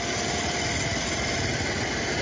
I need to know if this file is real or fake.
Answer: real